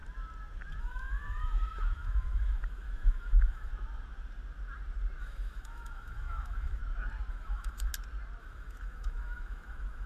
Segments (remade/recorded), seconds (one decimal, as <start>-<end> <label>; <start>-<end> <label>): 0.0-0.8 recorded; 0.8-3.7 remade; 3.7-5.2 recorded; 5.2-6.8 remade; 6.8-7.3 recorded; 7.3-7.9 remade; 7.9-8.4 recorded; 8.4-10.1 remade